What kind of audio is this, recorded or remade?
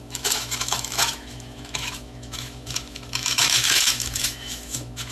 remade